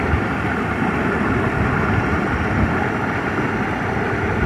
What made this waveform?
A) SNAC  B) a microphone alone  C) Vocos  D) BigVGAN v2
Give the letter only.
B